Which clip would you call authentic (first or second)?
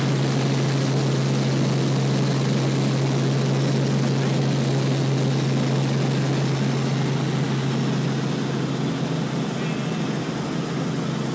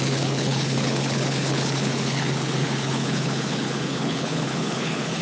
first